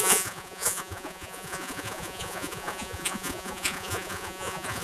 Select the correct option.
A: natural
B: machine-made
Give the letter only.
B